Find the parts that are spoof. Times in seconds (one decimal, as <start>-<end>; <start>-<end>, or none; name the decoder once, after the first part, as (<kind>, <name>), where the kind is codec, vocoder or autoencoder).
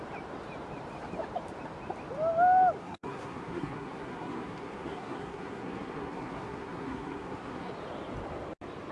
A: 2.8-7.7 (codec, SNAC)